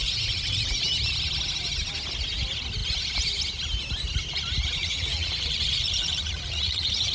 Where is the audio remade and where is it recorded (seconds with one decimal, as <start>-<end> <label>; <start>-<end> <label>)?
0.0-0.8 remade; 0.8-4.8 recorded; 4.8-7.1 remade